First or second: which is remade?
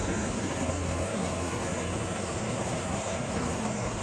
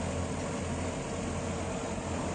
first